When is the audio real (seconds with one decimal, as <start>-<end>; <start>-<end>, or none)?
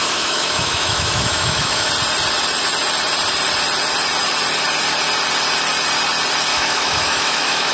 1.9-6.5